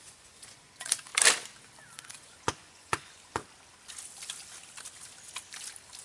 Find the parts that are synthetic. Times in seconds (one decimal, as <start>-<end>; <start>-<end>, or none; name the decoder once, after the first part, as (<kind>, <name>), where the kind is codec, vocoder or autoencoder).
0.0-1.1 (vocoder, Vocos); 2.1-3.4